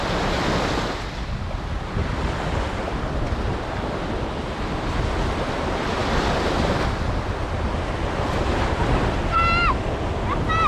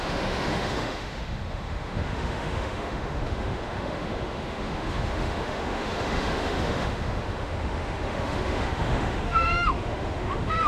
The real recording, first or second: first